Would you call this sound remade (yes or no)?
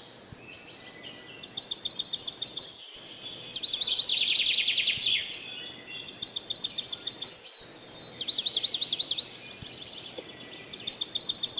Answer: no